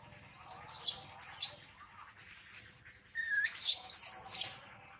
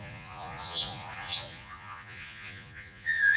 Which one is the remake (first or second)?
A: second